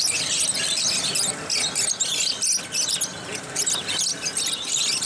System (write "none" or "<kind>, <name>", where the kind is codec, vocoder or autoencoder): none